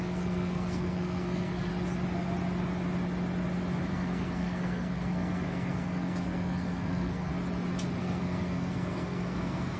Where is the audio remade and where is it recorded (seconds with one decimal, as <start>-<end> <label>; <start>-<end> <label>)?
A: 0.0-1.7 remade; 1.7-3.9 recorded; 3.9-7.3 remade; 7.3-8.0 recorded; 8.0-9.8 remade